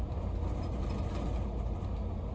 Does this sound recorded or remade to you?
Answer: recorded